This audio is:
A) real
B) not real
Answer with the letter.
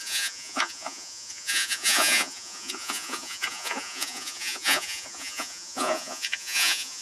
B